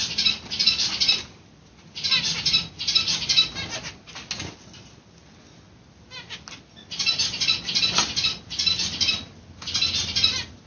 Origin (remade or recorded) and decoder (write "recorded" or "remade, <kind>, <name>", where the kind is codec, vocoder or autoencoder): recorded